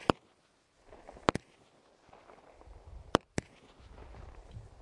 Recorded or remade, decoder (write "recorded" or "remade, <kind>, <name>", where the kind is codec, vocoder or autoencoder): recorded